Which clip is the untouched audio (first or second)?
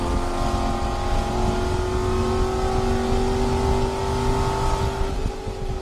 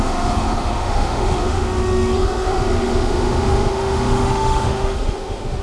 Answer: first